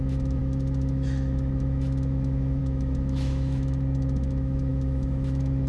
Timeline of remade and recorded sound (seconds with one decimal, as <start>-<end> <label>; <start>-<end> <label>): 0.0-5.7 remade